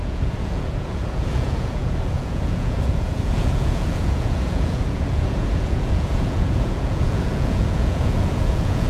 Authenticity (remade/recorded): remade